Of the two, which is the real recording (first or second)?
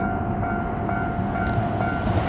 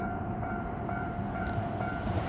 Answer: first